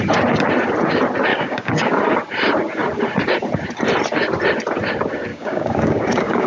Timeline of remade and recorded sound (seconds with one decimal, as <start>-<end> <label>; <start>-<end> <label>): 0.0-1.3 recorded; 1.3-2.0 remade; 2.0-5.3 recorded; 5.3-6.5 remade